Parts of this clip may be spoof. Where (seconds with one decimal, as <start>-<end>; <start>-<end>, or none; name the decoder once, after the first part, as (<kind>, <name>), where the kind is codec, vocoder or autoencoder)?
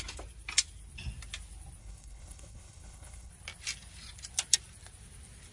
1.8-3.3 (codec, HILCodec)